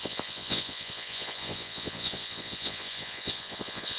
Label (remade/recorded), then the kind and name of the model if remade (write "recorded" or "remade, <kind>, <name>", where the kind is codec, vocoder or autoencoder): remade, vocoder, Vocos